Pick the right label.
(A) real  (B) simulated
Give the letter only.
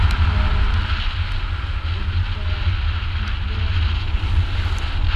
A